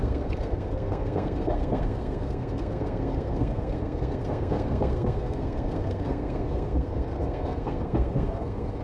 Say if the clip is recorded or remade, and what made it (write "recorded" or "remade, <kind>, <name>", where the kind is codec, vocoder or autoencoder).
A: remade, codec, SNAC